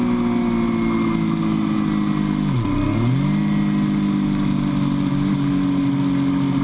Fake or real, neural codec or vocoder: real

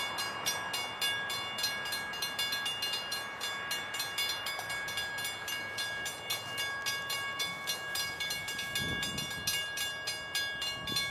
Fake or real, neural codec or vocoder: real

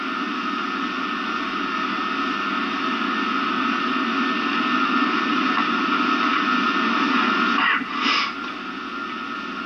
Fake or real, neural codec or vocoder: real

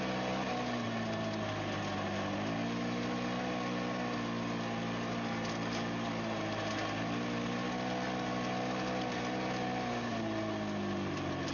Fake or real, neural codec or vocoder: real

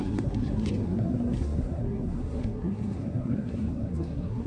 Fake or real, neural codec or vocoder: fake, codec, SNAC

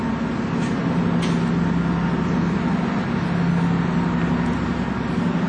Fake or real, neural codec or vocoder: real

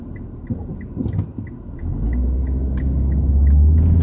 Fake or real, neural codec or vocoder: real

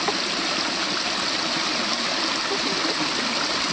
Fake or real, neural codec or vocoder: real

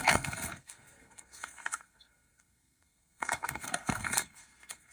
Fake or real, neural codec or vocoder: fake, codec, SNAC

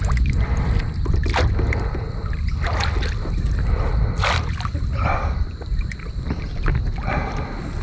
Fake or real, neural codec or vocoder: real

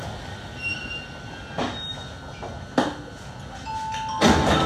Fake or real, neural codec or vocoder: real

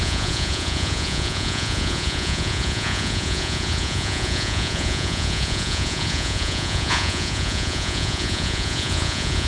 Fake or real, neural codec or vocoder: fake, vocoder, Vocos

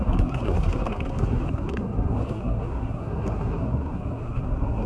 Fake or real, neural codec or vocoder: fake, codec, SNAC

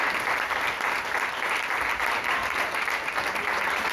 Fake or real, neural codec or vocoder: real